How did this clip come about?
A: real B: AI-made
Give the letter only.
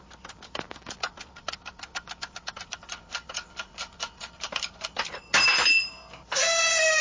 A